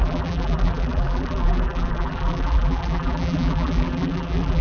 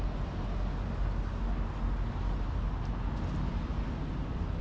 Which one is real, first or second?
second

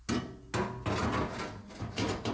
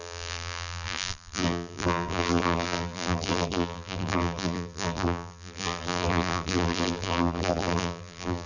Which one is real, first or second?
first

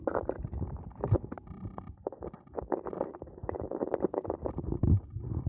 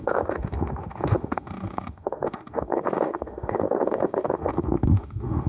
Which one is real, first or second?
first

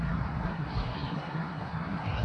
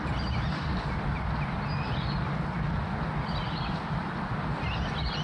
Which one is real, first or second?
second